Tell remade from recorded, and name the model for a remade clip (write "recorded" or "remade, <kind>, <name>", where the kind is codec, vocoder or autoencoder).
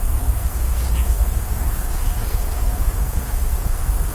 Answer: remade, codec, SNAC